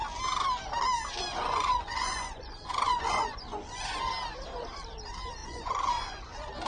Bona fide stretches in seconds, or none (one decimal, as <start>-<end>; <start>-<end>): 0.0-1.3; 4.0-5.4; 6.2-6.7